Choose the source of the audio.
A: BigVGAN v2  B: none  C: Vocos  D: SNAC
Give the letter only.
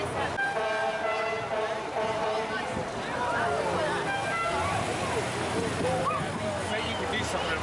B